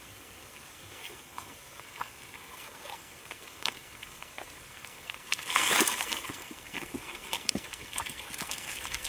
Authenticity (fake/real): fake